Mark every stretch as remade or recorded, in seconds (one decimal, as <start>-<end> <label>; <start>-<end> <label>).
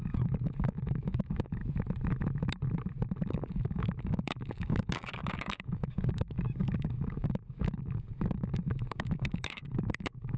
0.0-1.6 remade; 1.6-3.3 recorded; 3.3-10.4 remade